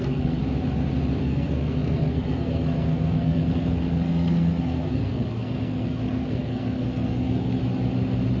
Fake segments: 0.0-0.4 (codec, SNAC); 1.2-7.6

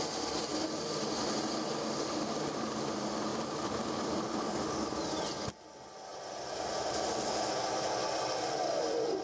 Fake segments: 3.3-4.1 (vocoder, BigVGAN v2)